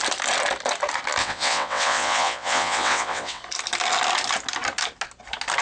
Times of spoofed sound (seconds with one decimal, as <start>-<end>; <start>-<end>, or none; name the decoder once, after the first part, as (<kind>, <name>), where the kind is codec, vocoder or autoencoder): 1.2-3.4 (vocoder, WaveNeXt)